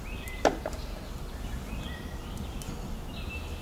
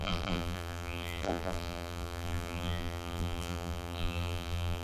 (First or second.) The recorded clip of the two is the first